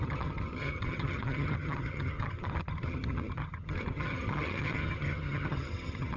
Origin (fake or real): fake